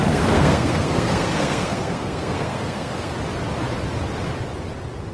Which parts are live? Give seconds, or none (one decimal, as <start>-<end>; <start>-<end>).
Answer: 3.1-5.1